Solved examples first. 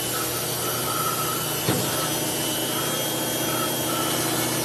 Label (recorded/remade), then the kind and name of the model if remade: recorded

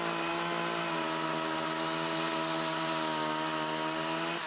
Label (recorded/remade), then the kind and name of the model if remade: recorded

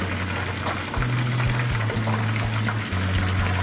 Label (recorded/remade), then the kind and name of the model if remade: recorded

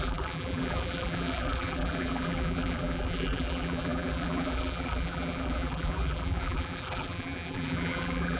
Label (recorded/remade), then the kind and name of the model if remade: remade, vocoder, BigVGAN v2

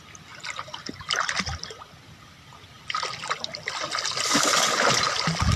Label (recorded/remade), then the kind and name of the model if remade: recorded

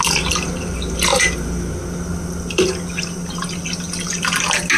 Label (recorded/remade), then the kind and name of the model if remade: recorded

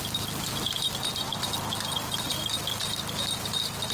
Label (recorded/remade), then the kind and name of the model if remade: recorded